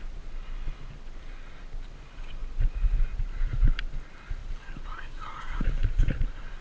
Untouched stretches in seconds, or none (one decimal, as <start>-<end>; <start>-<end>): 0.0-4.4